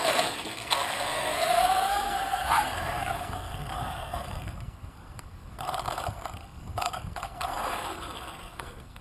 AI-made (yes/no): yes